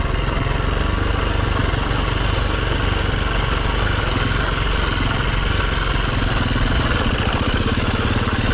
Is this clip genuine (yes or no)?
yes